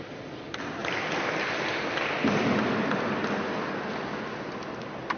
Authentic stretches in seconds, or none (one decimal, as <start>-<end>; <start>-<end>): 0.0-5.2